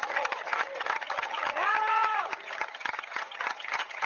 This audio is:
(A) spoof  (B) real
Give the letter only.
A